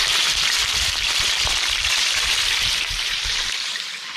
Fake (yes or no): yes